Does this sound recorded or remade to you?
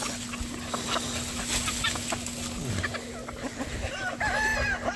recorded